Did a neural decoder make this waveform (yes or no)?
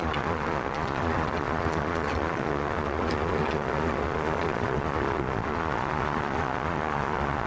yes